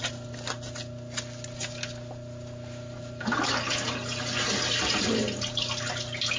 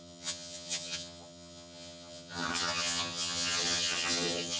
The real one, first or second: first